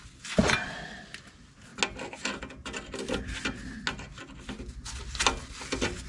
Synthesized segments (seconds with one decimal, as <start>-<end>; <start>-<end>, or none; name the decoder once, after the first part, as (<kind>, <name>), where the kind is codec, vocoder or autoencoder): none